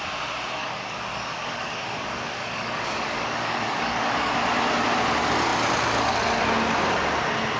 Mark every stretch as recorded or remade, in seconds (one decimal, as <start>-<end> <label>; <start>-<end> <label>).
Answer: 0.0-0.6 recorded; 0.6-4.3 remade; 4.3-7.6 recorded